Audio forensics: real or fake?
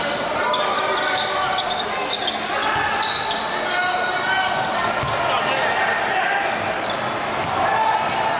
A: real